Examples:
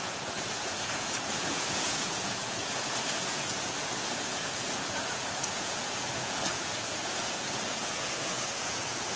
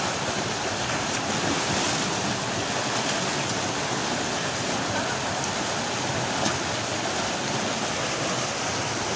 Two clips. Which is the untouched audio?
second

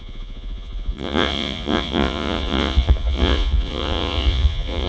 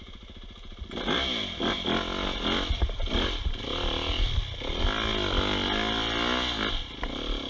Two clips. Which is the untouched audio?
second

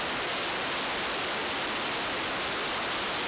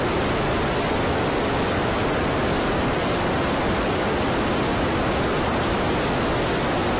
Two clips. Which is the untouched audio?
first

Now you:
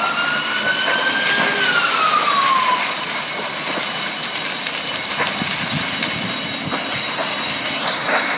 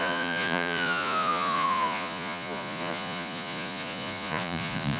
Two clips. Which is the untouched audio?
first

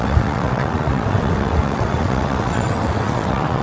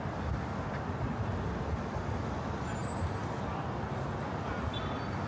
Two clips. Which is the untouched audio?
second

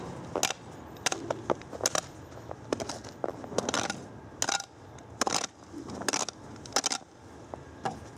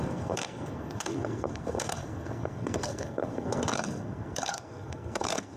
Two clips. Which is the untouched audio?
first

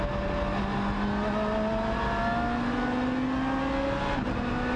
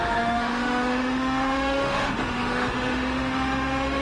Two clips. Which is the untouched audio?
first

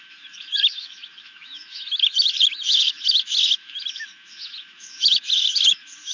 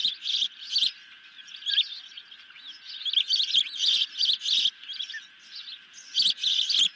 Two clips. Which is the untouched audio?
second